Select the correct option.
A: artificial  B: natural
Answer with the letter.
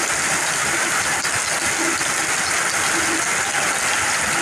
B